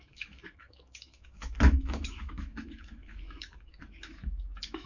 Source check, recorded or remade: remade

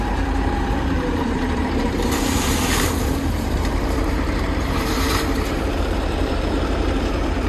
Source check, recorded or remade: remade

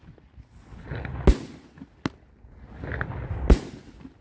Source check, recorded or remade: recorded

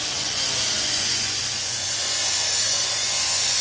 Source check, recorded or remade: remade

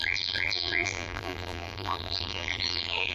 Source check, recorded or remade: remade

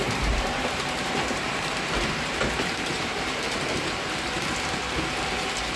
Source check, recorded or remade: remade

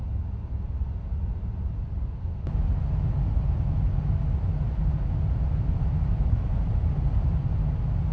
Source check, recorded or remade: recorded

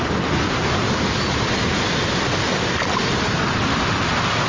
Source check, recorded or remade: recorded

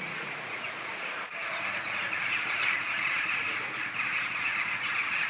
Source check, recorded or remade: remade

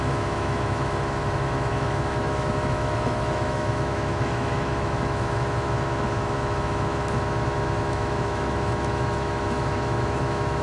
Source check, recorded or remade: remade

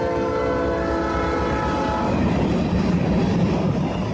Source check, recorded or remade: recorded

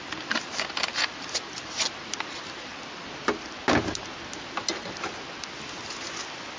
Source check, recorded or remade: recorded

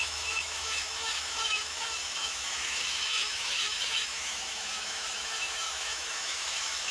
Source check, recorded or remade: remade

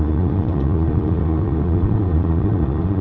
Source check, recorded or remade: remade